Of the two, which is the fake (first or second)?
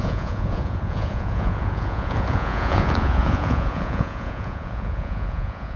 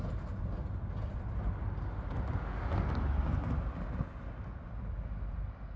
first